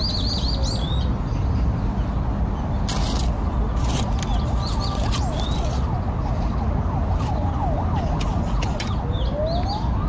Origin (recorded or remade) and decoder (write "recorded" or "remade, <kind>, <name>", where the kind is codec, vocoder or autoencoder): recorded